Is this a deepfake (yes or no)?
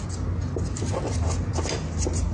no